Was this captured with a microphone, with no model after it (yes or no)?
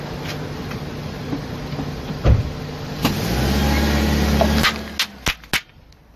yes